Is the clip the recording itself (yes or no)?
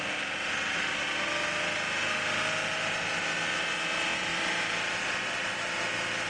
yes